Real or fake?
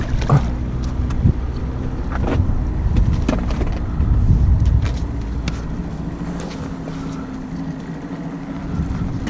real